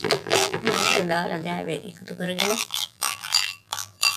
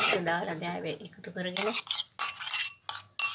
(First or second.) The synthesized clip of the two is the first